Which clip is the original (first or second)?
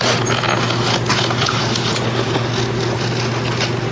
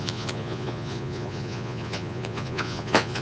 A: first